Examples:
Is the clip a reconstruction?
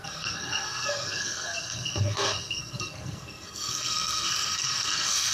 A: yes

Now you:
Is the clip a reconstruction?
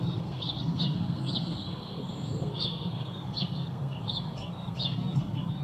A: yes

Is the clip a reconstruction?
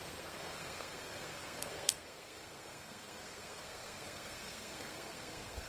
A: yes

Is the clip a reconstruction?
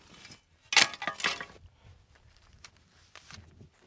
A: no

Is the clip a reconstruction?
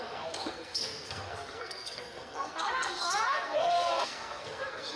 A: yes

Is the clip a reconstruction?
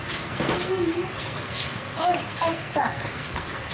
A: yes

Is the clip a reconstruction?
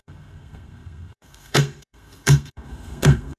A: yes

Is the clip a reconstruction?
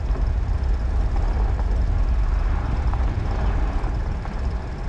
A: no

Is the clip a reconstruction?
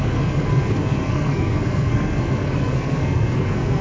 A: yes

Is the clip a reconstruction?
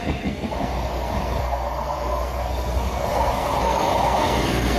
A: yes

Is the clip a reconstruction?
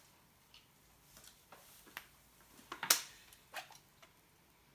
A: no